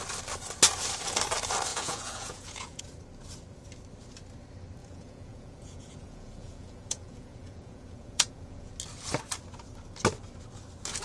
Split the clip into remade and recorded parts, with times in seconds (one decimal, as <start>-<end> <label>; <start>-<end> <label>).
0.0-1.7 recorded; 1.7-2.8 remade; 2.8-4.8 recorded; 4.8-8.7 remade; 8.7-11.0 recorded